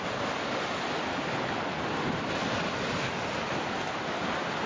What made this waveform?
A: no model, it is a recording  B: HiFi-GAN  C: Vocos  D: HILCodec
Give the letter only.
A